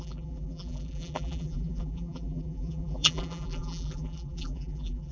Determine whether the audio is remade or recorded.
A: remade